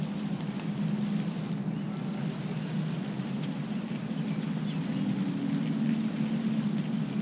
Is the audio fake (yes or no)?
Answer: no